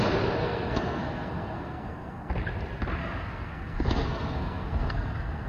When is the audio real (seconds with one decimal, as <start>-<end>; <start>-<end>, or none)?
0.0-0.4; 2.3-3.0